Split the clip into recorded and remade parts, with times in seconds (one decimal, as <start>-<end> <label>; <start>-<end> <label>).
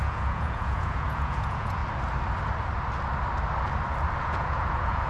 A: 0.0-1.8 remade; 1.8-4.2 recorded; 4.2-5.1 remade